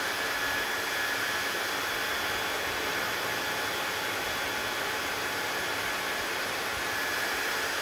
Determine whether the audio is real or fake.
real